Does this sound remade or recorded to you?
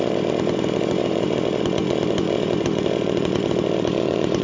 remade